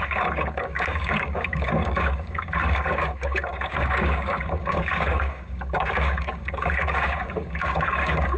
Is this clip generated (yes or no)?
yes